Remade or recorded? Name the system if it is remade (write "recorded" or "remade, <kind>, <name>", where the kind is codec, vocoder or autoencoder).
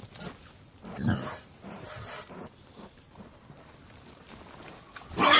recorded